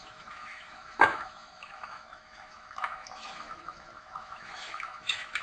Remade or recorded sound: remade